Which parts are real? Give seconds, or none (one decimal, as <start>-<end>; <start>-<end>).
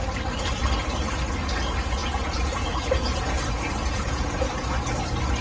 0.0-2.0; 4.3-5.4